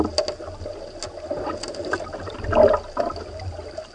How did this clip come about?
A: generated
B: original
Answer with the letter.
B